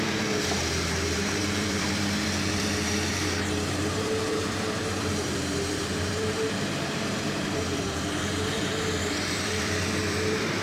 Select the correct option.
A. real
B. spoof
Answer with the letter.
B